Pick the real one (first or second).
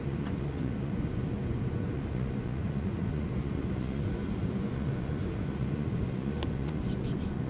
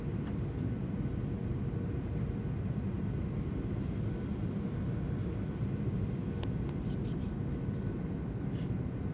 second